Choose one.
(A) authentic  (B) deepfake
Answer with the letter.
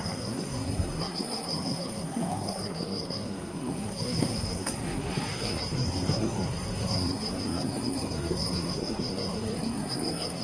B